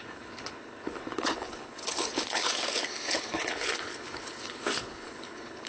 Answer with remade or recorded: remade